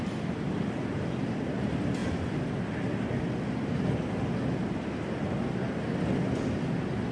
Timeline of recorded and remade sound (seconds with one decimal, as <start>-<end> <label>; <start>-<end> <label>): 0.0-7.1 recorded

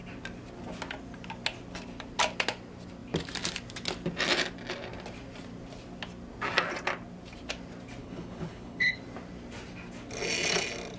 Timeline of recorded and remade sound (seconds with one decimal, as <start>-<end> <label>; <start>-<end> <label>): 0.0-8.0 recorded; 8.0-9.0 remade; 9.0-11.0 recorded

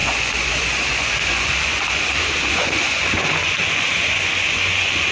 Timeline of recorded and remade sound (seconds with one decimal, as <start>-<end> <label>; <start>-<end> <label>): 0.0-5.1 remade

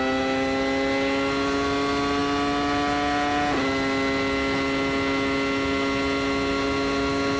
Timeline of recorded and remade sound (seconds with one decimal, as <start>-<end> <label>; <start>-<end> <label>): 0.0-7.4 recorded

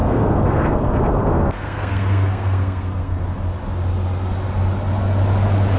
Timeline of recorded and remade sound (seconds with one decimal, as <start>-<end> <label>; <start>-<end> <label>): 0.0-3.2 remade; 3.2-5.8 recorded